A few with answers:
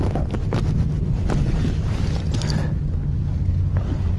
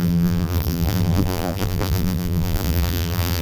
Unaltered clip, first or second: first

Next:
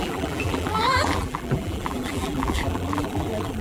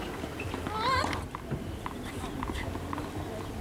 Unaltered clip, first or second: second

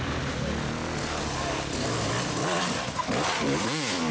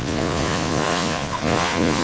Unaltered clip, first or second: first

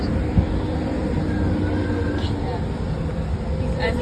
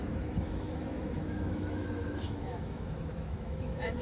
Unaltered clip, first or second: first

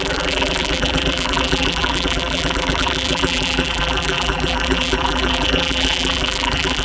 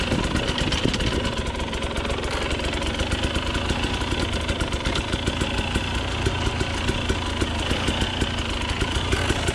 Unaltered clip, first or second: second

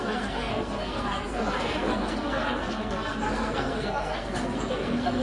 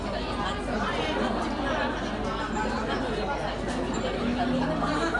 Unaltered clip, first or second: second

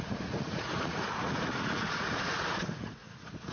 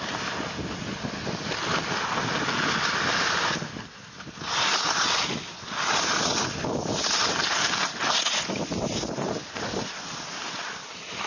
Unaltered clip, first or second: second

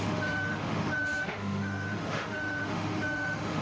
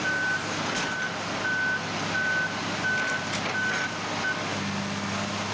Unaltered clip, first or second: second